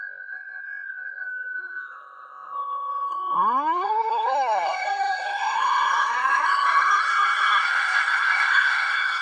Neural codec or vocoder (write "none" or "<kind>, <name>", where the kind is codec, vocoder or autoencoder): codec, SNAC